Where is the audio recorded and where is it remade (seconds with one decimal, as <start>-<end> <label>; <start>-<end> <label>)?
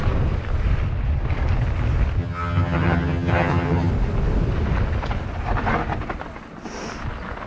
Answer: 0.0-2.2 recorded; 2.2-3.9 remade; 3.9-7.5 recorded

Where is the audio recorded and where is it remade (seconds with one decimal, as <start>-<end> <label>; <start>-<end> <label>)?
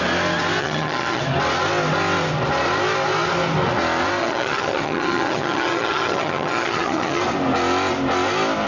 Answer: 0.0-0.6 recorded; 0.6-1.2 remade; 1.2-4.2 recorded; 4.2-7.2 remade; 7.2-8.7 recorded